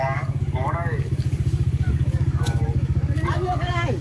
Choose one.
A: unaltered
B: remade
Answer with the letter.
B